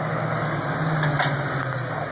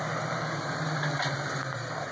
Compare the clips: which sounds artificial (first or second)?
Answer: second